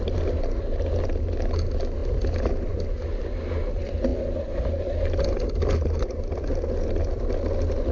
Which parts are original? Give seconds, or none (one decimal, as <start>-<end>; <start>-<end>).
0.0-7.9